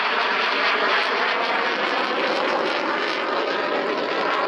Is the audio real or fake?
real